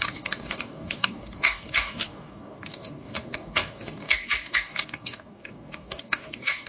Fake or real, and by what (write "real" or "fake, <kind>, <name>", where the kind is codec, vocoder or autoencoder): fake, codec, DAC